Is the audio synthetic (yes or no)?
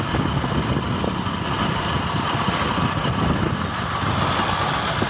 no